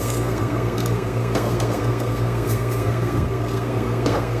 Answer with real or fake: fake